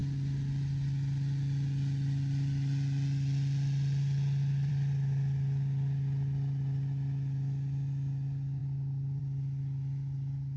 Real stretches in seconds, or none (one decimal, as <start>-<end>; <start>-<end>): 0.0-10.6